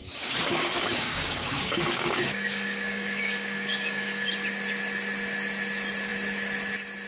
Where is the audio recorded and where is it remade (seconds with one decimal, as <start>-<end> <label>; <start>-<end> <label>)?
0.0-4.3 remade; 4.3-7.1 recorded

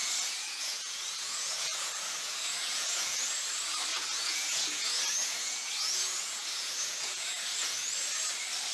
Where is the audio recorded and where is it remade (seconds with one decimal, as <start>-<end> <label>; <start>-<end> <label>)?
0.0-3.3 remade; 3.3-3.9 recorded; 3.9-7.9 remade; 7.9-8.7 recorded

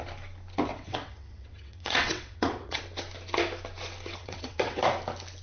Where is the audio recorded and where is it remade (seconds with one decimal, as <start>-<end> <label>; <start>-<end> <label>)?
0.0-0.7 recorded; 0.7-2.8 remade; 2.8-4.2 recorded; 4.2-4.8 remade; 4.8-5.4 recorded

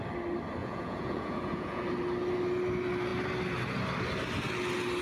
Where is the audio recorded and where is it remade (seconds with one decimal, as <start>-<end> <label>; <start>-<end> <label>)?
0.0-0.6 recorded; 0.6-1.8 remade; 1.8-5.0 recorded

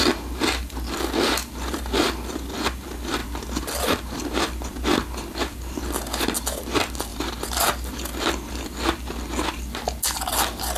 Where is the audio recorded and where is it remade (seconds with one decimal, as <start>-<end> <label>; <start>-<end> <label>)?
0.0-10.8 recorded